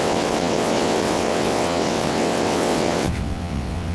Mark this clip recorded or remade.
remade